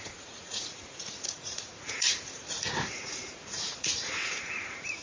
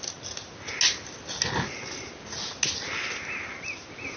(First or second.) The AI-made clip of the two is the first